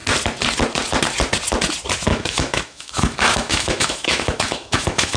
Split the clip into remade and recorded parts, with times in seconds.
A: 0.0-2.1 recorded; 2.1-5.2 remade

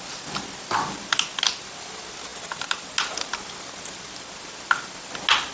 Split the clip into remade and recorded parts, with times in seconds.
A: 0.0-5.5 recorded